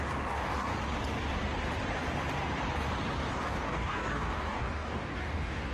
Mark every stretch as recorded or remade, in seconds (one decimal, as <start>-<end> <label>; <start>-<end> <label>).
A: 0.0-0.7 remade; 0.7-3.3 recorded; 3.3-5.7 remade